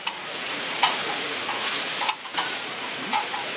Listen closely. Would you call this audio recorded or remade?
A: remade